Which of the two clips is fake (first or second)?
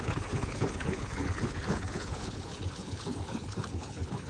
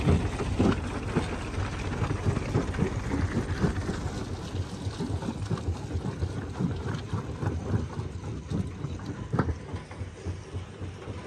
first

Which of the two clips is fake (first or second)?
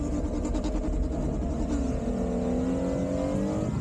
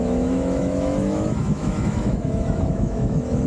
second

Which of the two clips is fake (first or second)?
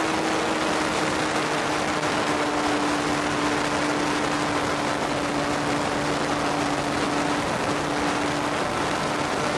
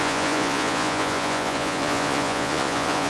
second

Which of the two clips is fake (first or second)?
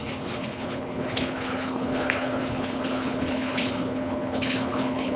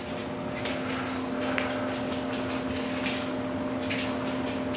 first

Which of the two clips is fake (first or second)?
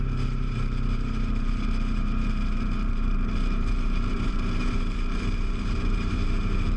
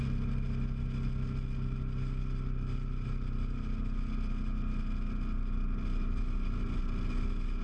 first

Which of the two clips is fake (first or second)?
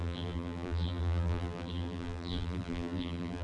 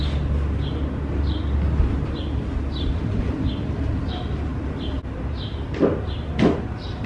first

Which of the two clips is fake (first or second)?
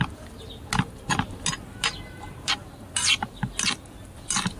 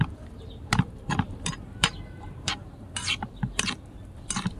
second